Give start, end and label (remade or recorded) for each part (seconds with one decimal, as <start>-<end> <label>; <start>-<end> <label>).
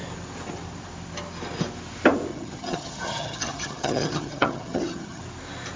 0.0-2.3 recorded; 2.3-5.2 remade; 5.2-5.8 recorded